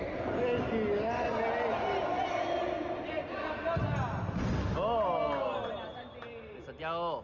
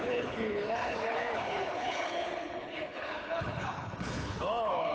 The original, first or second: first